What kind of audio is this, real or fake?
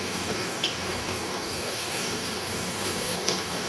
fake